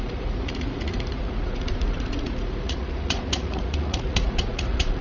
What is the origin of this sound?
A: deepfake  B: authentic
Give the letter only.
A